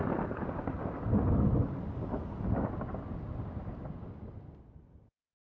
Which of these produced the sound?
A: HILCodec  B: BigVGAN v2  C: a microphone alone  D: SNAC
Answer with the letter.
C